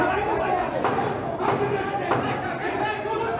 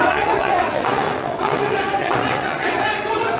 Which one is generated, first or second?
second